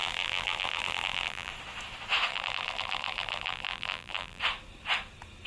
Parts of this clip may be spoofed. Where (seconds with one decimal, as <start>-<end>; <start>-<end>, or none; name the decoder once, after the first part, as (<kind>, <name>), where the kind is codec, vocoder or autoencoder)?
0.0-1.5 (vocoder, BigVGAN v2); 2.3-4.4